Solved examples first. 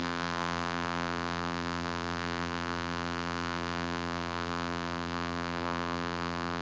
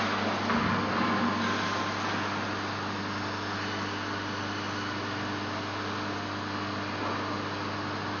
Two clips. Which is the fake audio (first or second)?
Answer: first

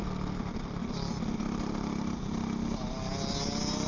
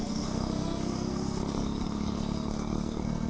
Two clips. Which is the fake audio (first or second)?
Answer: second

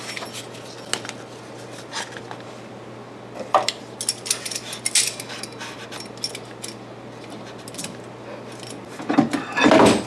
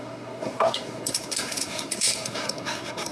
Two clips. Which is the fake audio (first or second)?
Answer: second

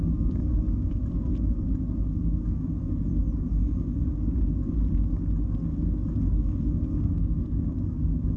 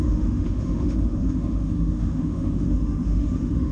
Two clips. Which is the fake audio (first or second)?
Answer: second